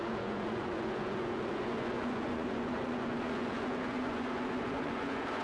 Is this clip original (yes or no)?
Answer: no